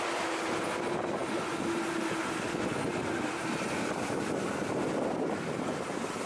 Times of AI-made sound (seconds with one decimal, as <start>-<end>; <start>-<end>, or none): none